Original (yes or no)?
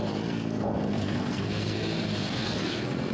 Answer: no